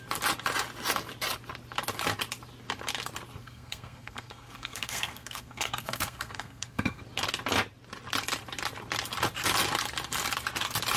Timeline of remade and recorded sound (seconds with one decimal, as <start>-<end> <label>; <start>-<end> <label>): 0.0-3.4 recorded; 3.4-7.0 remade; 7.0-11.0 recorded